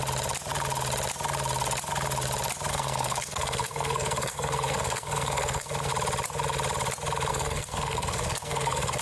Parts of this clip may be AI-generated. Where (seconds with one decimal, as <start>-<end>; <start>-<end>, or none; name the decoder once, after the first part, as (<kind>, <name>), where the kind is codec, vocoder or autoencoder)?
2.7-5.9 (codec, SNAC); 7.3-9.0